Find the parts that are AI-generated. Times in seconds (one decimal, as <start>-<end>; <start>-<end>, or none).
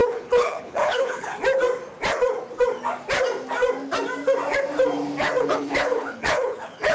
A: 0.0-1.3; 5.4-6.9